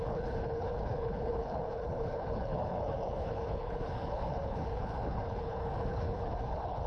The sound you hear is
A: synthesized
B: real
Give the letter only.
A